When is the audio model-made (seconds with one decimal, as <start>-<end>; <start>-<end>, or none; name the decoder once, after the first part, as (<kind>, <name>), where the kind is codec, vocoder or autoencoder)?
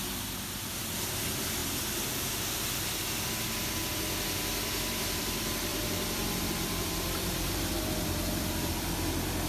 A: 5.7-8.9 (vocoder, BigVGAN v2)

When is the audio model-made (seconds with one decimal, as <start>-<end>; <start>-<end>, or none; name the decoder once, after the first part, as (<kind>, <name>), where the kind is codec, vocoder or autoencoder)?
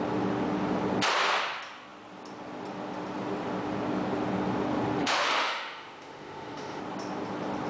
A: 5.0-6.8 (autoencoder, DAC-VAE)